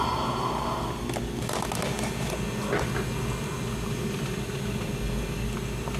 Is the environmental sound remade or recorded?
recorded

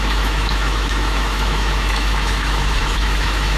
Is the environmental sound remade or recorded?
remade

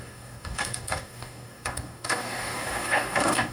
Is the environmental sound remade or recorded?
remade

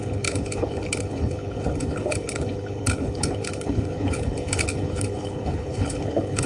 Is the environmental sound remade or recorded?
remade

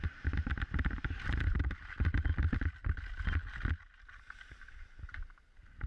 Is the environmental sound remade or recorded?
recorded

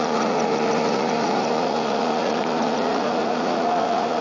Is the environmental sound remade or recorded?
remade